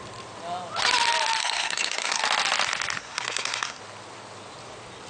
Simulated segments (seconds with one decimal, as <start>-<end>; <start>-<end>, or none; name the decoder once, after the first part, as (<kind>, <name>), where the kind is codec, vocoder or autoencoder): 1.4-2.2 (codec, SNAC); 3.0-3.8